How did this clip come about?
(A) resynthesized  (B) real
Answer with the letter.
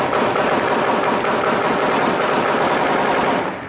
B